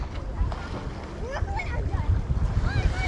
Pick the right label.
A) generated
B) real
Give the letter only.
B